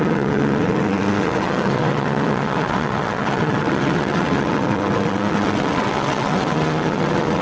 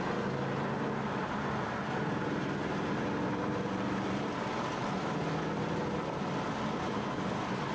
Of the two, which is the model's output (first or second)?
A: first